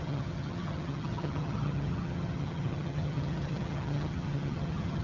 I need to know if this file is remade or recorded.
remade